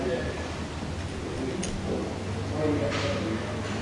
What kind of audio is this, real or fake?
real